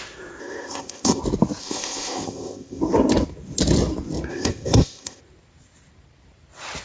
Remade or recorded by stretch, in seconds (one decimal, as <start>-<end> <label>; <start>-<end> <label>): 0.0-0.4 recorded; 0.4-1.2 remade; 1.2-1.6 recorded; 1.6-2.8 remade; 2.8-4.3 recorded; 4.3-5.2 remade; 5.2-6.8 recorded